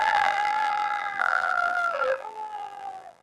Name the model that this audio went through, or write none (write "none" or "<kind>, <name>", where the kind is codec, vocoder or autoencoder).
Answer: vocoder, BigVGAN v2